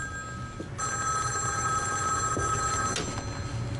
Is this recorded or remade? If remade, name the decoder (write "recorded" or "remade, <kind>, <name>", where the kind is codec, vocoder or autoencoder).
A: recorded